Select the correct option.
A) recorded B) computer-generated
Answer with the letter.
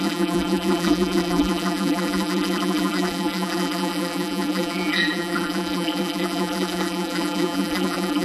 B